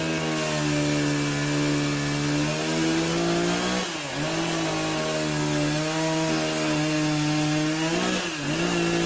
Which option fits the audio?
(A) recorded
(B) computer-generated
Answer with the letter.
A